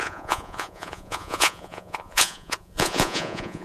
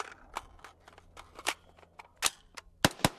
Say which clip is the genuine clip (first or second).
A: second